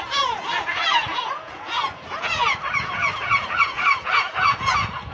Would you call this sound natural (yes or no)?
no